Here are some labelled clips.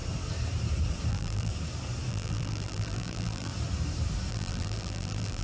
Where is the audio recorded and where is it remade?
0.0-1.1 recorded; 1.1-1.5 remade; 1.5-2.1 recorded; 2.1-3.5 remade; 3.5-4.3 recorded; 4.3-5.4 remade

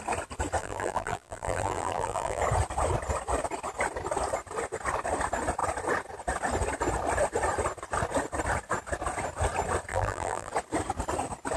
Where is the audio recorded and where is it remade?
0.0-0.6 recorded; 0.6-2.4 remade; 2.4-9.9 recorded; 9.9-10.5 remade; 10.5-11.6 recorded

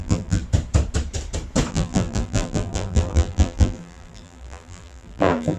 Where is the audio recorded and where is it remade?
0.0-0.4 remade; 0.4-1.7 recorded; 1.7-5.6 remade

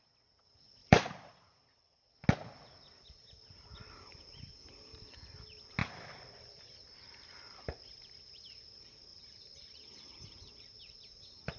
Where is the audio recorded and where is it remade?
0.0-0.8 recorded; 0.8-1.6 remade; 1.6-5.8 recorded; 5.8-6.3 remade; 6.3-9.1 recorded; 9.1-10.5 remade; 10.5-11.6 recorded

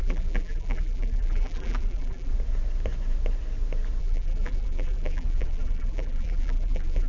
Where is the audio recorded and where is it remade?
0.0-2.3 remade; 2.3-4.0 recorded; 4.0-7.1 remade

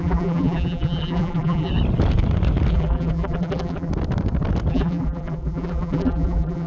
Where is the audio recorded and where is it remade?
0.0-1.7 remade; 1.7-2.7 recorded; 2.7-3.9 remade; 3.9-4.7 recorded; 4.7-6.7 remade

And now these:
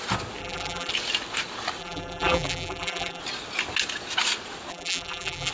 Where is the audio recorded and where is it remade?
0.0-0.4 recorded; 0.4-0.9 remade; 0.9-1.8 recorded; 1.8-3.2 remade; 3.2-4.7 recorded; 4.7-5.5 remade